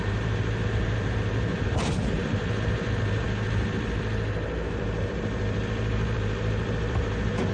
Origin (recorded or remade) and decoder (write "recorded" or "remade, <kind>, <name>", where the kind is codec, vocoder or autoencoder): remade, vocoder, BigVGAN v2